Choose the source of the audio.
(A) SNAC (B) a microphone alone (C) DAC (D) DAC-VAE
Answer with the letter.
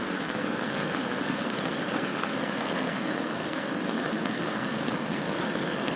A